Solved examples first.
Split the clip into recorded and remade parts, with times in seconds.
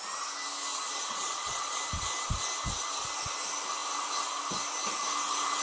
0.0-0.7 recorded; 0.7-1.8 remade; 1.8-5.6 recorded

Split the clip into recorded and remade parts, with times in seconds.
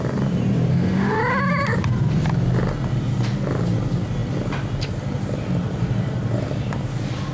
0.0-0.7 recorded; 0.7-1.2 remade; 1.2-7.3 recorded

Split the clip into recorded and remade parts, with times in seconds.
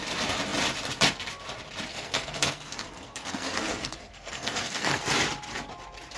0.0-1.9 recorded; 1.9-5.0 remade; 5.0-6.2 recorded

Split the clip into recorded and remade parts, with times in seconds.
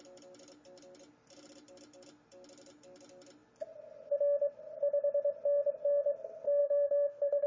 0.0-6.6 recorded; 6.6-7.5 remade